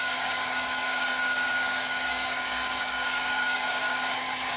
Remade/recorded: remade